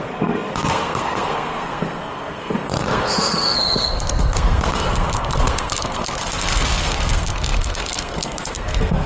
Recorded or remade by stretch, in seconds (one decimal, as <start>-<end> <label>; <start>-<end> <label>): 0.0-9.1 remade